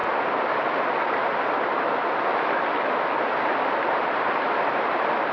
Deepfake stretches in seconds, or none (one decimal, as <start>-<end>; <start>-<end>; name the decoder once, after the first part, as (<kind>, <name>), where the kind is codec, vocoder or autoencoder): none